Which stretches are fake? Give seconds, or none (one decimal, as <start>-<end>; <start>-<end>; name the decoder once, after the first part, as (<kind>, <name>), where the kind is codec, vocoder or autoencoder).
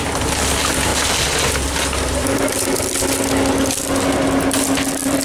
none